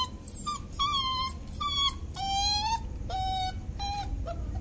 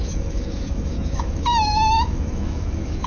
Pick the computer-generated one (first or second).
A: second